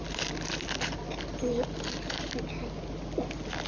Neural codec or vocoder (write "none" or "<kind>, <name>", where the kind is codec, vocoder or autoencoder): none